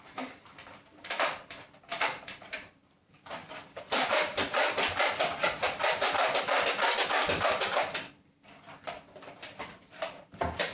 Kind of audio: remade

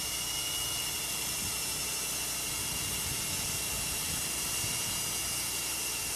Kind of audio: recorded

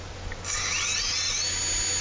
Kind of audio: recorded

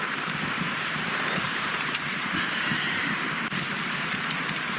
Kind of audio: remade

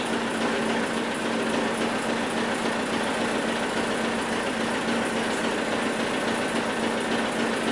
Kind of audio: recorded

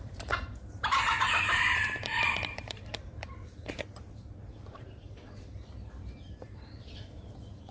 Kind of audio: remade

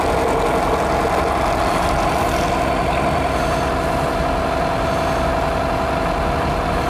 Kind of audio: recorded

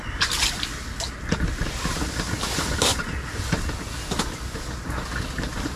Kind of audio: recorded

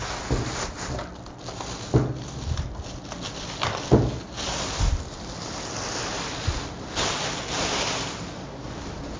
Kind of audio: recorded